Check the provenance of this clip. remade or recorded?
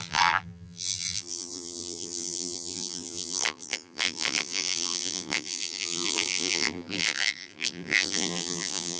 remade